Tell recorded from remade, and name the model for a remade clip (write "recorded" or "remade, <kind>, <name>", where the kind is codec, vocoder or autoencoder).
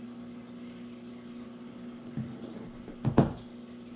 recorded